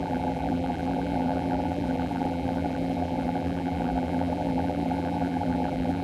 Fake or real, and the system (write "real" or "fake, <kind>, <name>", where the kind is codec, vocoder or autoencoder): fake, vocoder, BigVGAN v2